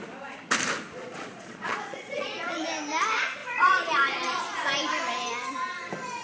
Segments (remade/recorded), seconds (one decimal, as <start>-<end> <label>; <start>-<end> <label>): 0.0-1.0 recorded; 1.0-2.6 remade; 2.6-3.4 recorded; 3.4-4.4 remade; 4.4-6.2 recorded

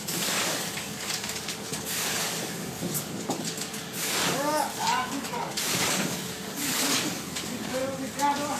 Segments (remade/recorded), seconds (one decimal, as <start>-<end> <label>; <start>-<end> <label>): 0.0-7.8 remade; 7.8-8.6 recorded

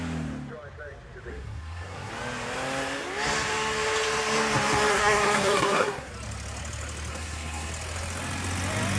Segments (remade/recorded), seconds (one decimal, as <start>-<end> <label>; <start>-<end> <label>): 0.0-1.3 recorded; 1.3-2.1 remade; 2.1-4.9 recorded; 4.9-6.1 remade; 6.1-7.1 recorded; 7.1-7.7 remade; 7.7-9.0 recorded

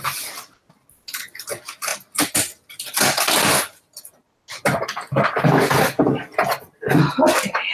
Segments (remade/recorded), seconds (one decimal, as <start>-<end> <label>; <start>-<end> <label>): 0.0-7.7 recorded